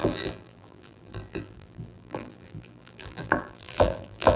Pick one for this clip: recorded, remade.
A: remade